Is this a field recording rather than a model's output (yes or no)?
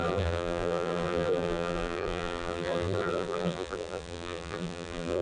no